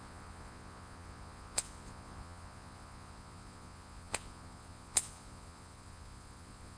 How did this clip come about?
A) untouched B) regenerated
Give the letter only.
B